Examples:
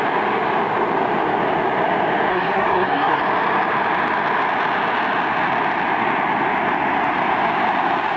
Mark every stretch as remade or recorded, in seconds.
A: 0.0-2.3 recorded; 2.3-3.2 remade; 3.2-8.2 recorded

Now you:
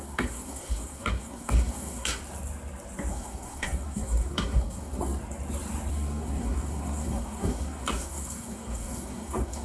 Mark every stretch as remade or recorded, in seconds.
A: 0.0-2.2 remade; 2.2-3.1 recorded; 3.1-5.2 remade; 5.2-5.9 recorded; 5.9-9.6 remade

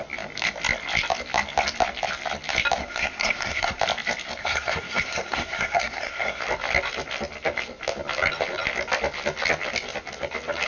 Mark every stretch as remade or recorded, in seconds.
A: 0.0-2.8 recorded; 2.8-3.8 remade; 3.8-4.4 recorded; 4.4-6.4 remade; 6.4-10.7 recorded

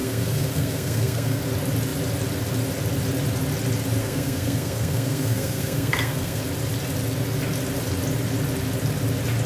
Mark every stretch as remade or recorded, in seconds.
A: 0.0-1.4 remade; 1.4-4.0 recorded; 4.0-6.4 remade; 6.4-9.5 recorded

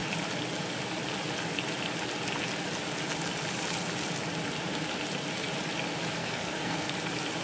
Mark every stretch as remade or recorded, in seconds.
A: 0.0-6.2 recorded; 6.2-6.9 remade; 6.9-7.4 recorded